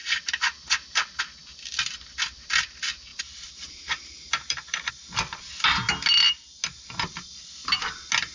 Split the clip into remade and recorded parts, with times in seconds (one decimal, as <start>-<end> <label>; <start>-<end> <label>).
0.0-1.2 remade; 1.2-3.1 recorded; 3.1-4.9 remade; 4.9-8.3 recorded